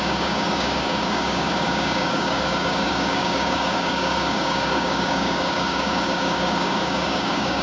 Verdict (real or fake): fake